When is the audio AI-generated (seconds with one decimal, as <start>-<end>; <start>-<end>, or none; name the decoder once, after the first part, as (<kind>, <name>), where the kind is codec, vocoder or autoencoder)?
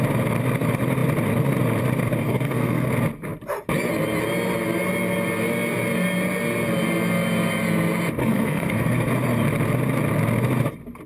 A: 2.2-2.9 (codec, SNAC); 8.2-9.1